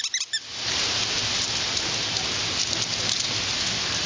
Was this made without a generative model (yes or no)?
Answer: yes